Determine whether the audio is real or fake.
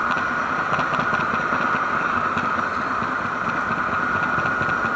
real